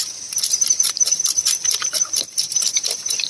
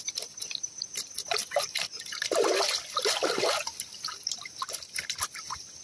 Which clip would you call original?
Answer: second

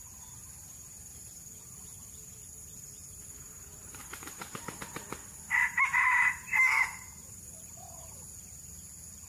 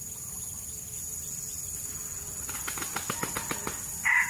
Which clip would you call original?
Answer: second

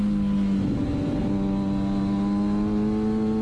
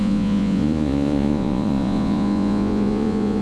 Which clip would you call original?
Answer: first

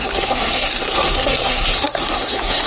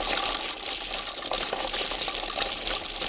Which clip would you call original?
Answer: second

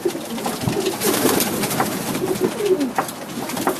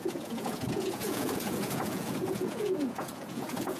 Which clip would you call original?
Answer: first